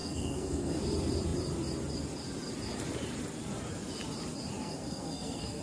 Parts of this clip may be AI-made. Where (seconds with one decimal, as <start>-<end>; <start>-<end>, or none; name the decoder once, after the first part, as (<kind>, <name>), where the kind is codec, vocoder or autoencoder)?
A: 0.0-0.8 (codec, SNAC); 4.6-5.6